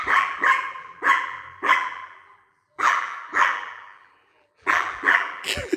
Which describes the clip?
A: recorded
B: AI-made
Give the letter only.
B